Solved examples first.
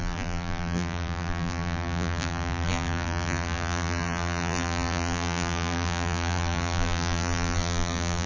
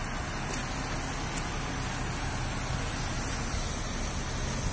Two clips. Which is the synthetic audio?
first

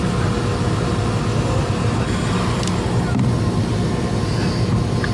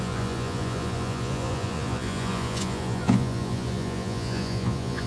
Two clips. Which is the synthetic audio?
second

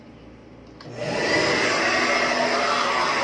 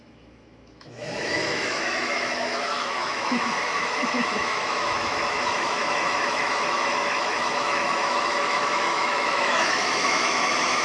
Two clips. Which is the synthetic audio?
second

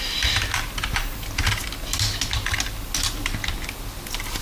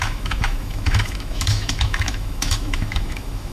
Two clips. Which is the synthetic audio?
second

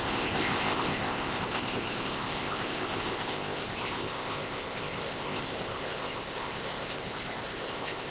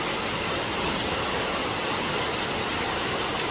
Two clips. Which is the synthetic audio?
first